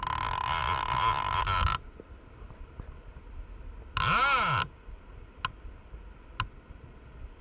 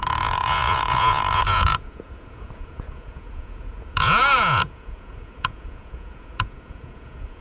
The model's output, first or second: second